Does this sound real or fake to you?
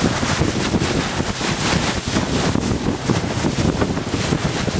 real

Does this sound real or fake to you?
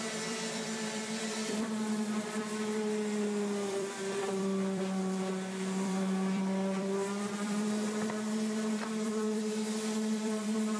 fake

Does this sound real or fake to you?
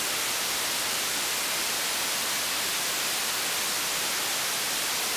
real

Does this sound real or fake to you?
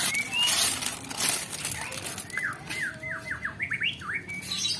real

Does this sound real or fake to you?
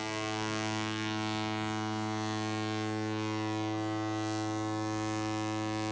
real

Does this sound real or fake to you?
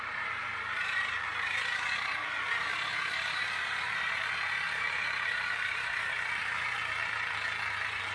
fake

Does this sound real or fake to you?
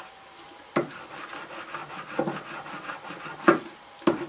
real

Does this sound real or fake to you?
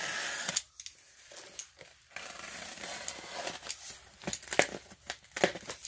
real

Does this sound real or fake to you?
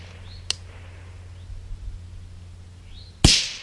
real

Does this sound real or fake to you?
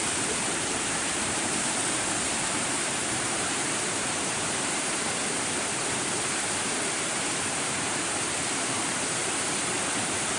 fake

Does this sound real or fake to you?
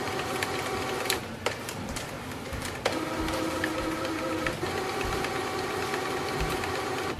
fake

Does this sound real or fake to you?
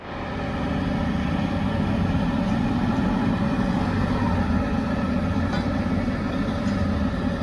real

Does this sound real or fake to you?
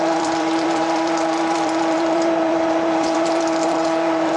fake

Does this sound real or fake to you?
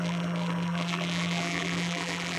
fake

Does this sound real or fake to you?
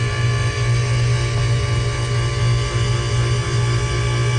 real